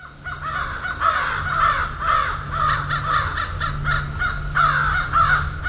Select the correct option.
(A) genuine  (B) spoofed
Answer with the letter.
A